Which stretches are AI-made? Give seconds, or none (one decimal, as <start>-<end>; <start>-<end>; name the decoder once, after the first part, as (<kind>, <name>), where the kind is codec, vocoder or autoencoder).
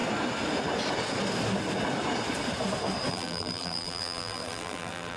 3.1-5.2 (vocoder, BigVGAN v2)